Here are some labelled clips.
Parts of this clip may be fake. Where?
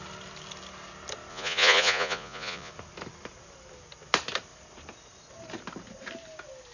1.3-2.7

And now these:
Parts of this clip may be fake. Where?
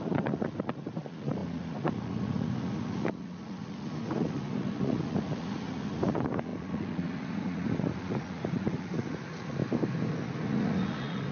0.0-9.6; 10.1-11.3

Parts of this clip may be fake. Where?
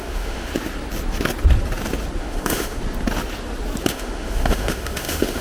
0.0-0.5; 2.2-2.8; 3.9-5.4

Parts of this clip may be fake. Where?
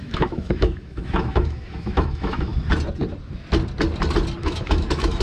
0.0-2.5; 4.4-5.2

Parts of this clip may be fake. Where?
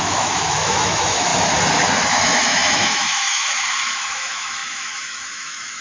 0.0-1.3; 2.1-5.8